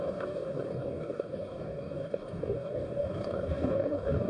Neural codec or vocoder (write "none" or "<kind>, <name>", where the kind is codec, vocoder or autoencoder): codec, DAC